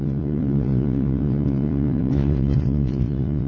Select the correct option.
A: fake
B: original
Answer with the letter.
A